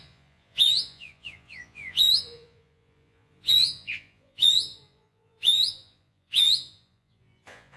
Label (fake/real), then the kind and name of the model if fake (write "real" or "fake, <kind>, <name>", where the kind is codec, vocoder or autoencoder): fake, vocoder, Vocos